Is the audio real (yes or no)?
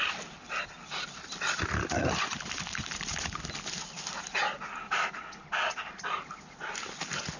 yes